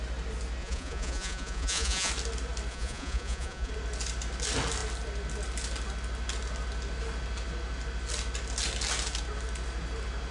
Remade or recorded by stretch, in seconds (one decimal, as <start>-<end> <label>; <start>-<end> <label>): 0.0-0.6 recorded; 0.6-2.1 remade; 2.1-2.7 recorded; 2.7-3.7 remade; 3.7-10.3 recorded